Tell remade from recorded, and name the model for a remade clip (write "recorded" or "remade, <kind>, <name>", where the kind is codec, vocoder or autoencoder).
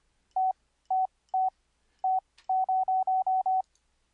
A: recorded